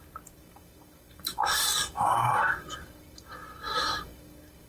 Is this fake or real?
fake